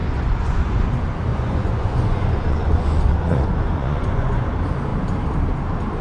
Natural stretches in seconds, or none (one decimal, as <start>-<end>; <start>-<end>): 0.9-1.3; 4.5-6.0